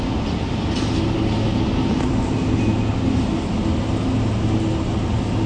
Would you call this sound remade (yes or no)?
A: no